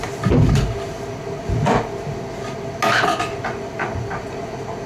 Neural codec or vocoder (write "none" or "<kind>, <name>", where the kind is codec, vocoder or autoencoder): none